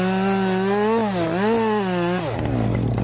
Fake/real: real